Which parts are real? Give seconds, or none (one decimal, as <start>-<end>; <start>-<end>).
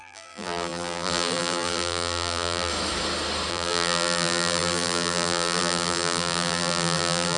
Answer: 2.7-3.5